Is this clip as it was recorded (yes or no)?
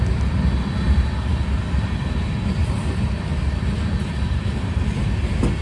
yes